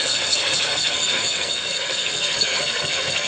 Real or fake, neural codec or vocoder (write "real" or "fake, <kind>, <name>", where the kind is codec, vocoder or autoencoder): fake, codec, SNAC